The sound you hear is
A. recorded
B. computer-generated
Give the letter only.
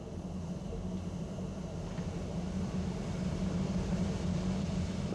A